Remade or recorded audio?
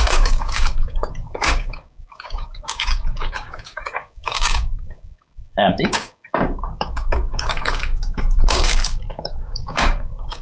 remade